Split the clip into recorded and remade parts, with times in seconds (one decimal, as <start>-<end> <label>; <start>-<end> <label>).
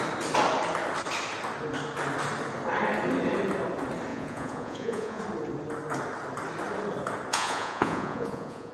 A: 0.0-4.1 recorded; 4.1-5.2 remade; 5.2-7.3 recorded; 7.3-8.7 remade